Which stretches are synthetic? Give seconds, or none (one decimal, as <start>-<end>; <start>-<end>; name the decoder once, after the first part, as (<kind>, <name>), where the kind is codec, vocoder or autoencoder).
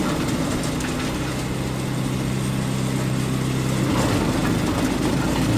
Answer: none